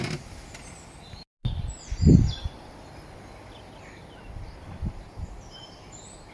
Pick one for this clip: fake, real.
real